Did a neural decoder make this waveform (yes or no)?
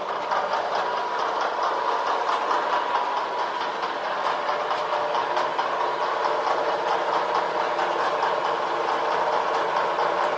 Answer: no